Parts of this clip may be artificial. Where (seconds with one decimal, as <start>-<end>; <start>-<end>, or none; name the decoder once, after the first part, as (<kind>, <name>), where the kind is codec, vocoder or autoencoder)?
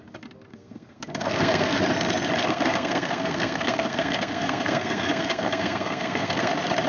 0.5-1.8 (codec, SNAC); 2.4-6.5